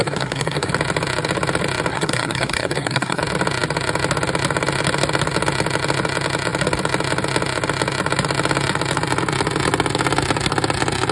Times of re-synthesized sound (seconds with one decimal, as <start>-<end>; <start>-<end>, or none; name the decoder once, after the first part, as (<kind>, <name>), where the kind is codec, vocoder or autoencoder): 0.0-0.7 (codec, SNAC); 1.9-3.2

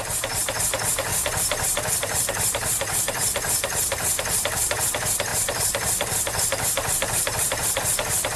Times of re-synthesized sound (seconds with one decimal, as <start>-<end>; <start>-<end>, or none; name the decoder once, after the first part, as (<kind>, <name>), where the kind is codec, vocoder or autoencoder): 1.1-4.8 (vocoder, BigVGAN v2); 5.3-7.8